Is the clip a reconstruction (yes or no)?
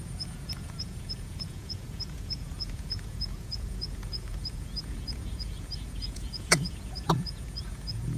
yes